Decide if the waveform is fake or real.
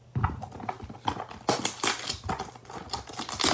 real